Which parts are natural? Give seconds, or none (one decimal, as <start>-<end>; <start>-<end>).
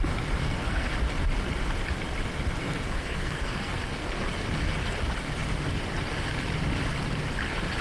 0.0-0.4; 0.9-2.6; 4.3-7.8